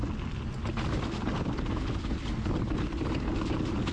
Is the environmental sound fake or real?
real